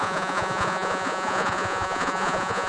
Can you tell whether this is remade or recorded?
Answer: remade